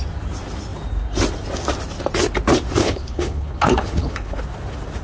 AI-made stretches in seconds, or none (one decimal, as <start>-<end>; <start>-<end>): 2.8-4.4